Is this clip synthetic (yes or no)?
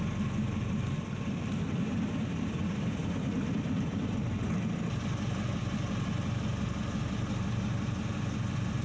no